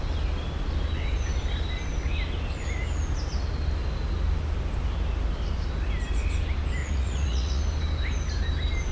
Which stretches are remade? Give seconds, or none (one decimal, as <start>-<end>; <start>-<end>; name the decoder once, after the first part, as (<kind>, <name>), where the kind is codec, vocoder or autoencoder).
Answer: 6.8-7.6 (vocoder, Vocos)